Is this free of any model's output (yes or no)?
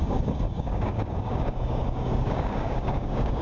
no